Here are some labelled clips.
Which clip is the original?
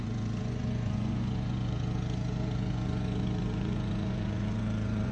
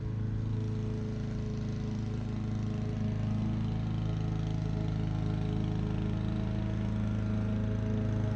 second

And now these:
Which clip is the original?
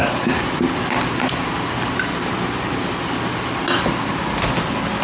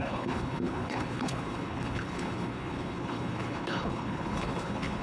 first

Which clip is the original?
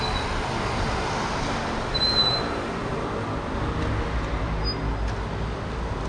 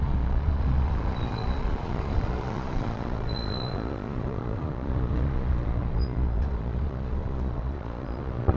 first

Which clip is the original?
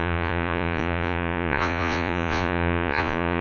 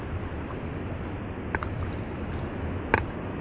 second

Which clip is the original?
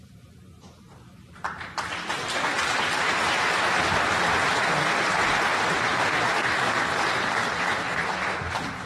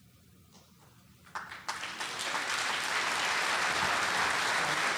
second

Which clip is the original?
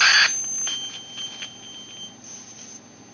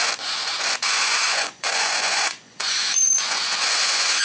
first